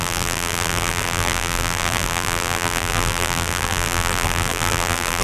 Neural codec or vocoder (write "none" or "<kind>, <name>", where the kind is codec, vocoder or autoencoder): vocoder, BigVGAN v2